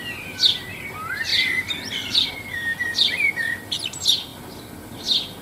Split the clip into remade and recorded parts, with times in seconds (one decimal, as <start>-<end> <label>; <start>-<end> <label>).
0.0-1.3 recorded; 1.3-2.3 remade; 2.3-2.7 recorded; 2.7-3.7 remade; 3.7-5.4 recorded